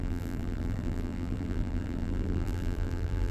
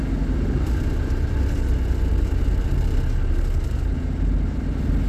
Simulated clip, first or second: first